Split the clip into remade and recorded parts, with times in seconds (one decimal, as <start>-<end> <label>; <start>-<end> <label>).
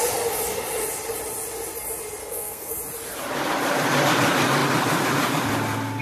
0.0-2.2 recorded; 2.2-2.7 remade; 2.7-6.0 recorded